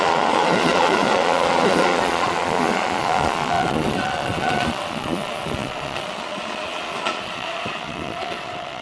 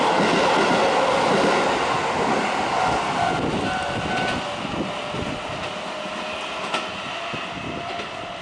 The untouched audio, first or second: second